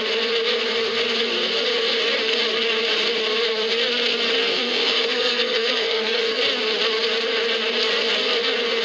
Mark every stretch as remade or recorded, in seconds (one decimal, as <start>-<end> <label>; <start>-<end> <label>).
0.0-4.4 recorded; 4.4-6.4 remade; 6.4-8.8 recorded